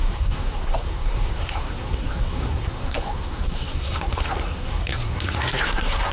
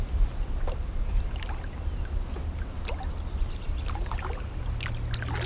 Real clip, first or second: second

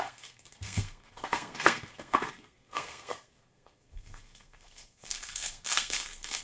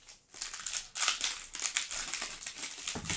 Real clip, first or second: second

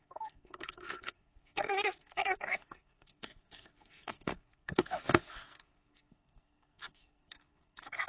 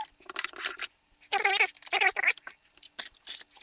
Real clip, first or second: second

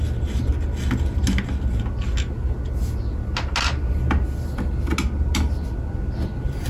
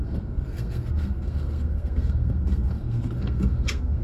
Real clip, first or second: first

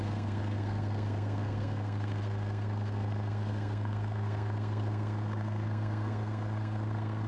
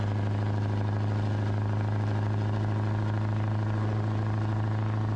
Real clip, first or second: second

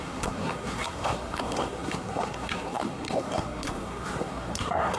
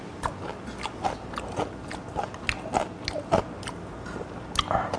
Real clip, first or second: second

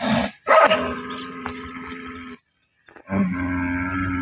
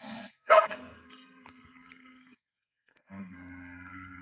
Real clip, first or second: first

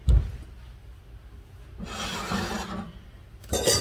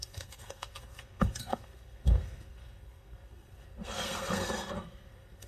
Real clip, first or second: first